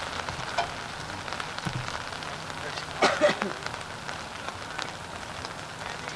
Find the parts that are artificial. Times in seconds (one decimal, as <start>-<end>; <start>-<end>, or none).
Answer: none